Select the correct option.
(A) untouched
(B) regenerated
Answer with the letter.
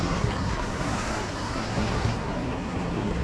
B